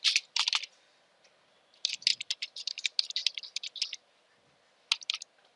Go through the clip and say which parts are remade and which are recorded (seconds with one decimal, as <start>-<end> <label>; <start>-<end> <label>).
0.0-5.6 recorded

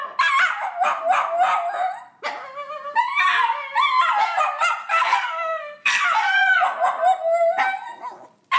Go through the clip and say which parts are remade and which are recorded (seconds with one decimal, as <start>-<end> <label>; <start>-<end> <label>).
0.0-4.9 recorded; 4.9-6.0 remade; 6.0-8.6 recorded

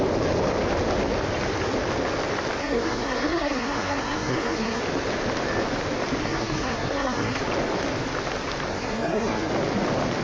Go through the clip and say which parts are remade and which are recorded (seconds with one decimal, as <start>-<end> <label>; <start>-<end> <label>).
0.0-2.6 recorded; 2.6-4.8 remade; 4.8-6.2 recorded; 6.2-7.4 remade; 7.4-8.7 recorded; 8.7-9.5 remade; 9.5-10.2 recorded

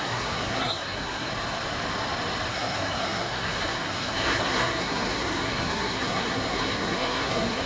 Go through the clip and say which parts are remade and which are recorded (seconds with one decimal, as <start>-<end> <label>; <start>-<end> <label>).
0.0-1.3 remade; 1.3-2.5 recorded; 2.5-7.7 remade

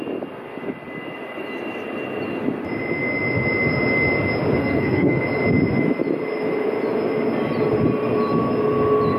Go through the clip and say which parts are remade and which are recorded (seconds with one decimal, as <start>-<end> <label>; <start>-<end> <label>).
0.0-4.6 recorded; 4.6-5.2 remade; 5.2-9.2 recorded